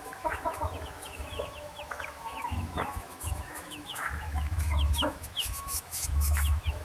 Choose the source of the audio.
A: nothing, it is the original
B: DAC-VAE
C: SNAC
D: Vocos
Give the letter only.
B